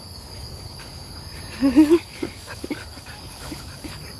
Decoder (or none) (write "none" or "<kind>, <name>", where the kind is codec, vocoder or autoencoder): codec, DAC